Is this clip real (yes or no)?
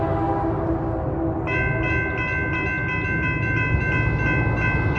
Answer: yes